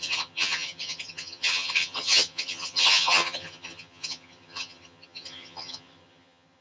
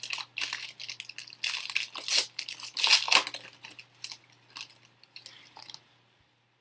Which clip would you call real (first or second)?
second